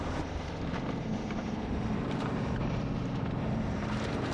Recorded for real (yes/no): no